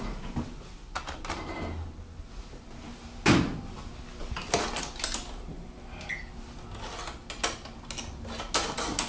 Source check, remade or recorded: recorded